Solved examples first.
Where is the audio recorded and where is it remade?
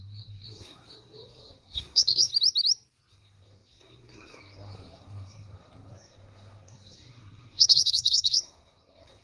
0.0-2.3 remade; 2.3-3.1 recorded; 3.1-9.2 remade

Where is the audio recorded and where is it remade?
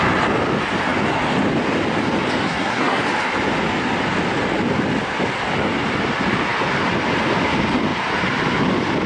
0.0-2.4 recorded; 2.4-3.0 remade; 3.0-9.1 recorded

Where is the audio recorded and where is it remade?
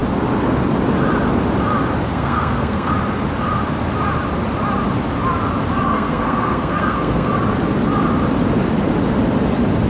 0.0-2.1 recorded; 2.1-2.9 remade; 2.9-5.9 recorded; 5.9-7.3 remade; 7.3-9.9 recorded